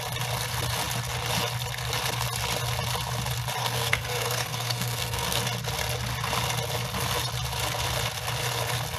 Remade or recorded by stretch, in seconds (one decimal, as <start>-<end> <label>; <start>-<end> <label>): 0.0-3.6 recorded; 3.6-5.4 remade; 5.4-9.0 recorded